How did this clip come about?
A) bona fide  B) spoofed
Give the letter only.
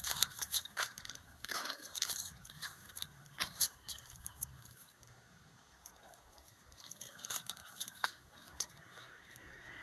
B